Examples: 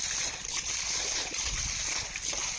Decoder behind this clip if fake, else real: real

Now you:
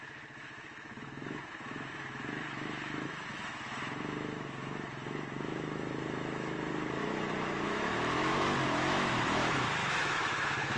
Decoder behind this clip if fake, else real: fake, autoencoder, DAC-VAE